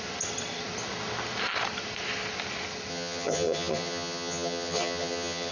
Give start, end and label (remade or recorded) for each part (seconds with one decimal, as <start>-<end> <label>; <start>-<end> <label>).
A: 0.0-2.9 recorded; 2.9-5.5 remade